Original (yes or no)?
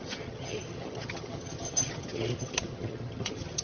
no